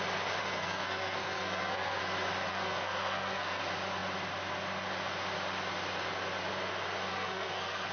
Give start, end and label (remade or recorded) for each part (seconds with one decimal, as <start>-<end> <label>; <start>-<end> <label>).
0.0-0.4 recorded; 0.4-2.0 remade; 2.0-2.5 recorded; 2.5-3.6 remade; 3.6-7.1 recorded; 7.1-7.9 remade